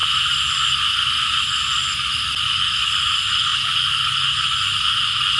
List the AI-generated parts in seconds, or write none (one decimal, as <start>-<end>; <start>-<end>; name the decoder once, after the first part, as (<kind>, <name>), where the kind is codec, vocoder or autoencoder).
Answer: none